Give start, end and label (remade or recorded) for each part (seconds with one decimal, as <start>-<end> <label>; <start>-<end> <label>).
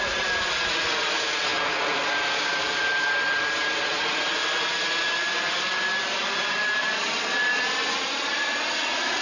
0.0-7.8 recorded; 7.8-9.2 remade